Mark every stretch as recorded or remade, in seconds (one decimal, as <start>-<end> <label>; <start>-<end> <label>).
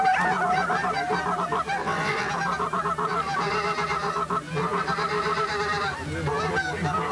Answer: 0.0-1.8 recorded; 1.8-2.3 remade; 2.3-7.1 recorded